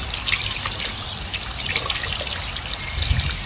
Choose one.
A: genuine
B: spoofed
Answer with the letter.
A